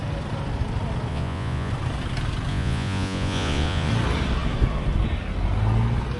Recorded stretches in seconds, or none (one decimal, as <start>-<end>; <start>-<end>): 0.0-1.1; 1.7-2.5; 3.9-6.2